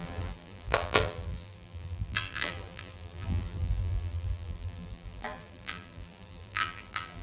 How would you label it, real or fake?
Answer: fake